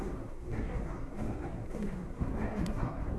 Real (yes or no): no